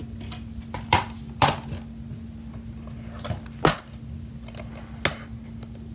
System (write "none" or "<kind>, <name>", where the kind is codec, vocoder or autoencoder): none